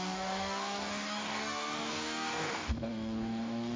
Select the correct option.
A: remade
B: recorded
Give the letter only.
A